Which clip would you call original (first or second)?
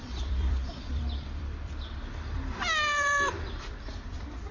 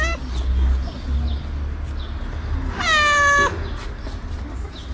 second